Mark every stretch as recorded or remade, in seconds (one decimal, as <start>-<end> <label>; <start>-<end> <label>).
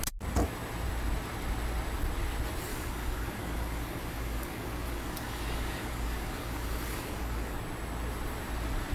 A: 0.0-2.7 recorded; 2.7-7.6 remade; 7.6-8.9 recorded